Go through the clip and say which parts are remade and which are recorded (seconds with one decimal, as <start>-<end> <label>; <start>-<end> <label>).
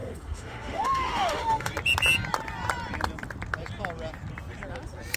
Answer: 0.0-1.7 remade; 1.7-5.2 recorded